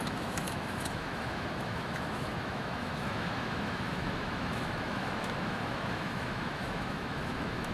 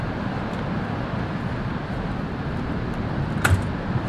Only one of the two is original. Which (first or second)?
second